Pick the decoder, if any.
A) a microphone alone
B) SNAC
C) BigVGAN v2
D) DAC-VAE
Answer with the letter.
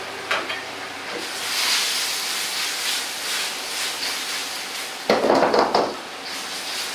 A